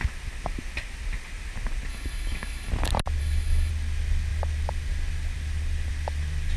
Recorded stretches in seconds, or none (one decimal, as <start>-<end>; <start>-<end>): 0.0-1.9; 2.7-3.2; 3.7-6.6